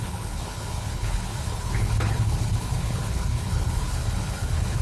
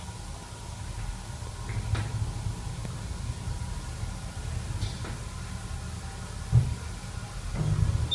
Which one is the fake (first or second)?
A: first